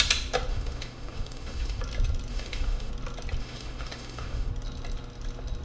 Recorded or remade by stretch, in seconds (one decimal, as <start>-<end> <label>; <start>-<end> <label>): 0.0-0.5 recorded; 0.5-1.8 remade; 1.8-2.3 recorded; 2.3-2.9 remade; 2.9-3.4 recorded; 3.4-4.5 remade; 4.5-5.6 recorded